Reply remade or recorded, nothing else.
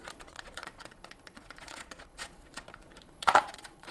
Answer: remade